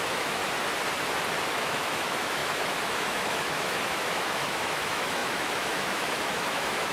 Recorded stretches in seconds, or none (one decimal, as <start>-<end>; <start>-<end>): 0.4-1.5